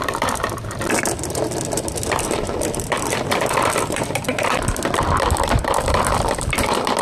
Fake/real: fake